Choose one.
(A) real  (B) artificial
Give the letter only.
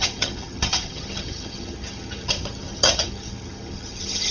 B